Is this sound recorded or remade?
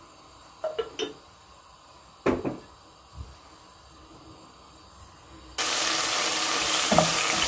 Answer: recorded